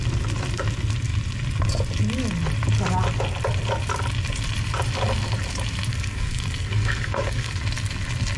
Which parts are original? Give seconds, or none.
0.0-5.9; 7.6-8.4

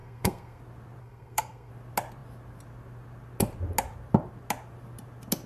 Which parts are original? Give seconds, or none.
0.6-1.0; 1.7-5.5

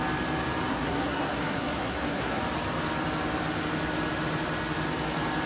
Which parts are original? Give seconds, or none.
0.0-0.7; 2.4-5.5

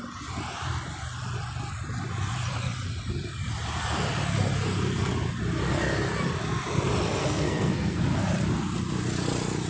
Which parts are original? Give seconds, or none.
0.0-7.2; 8.0-9.7

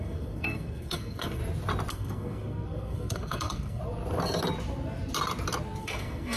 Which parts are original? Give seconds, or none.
1.4-1.9; 3.8-5.8

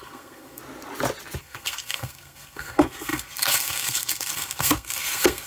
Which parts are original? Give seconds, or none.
0.6-1.4

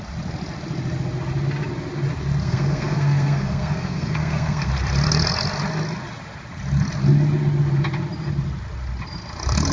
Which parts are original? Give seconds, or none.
0.0-2.4; 4.7-9.7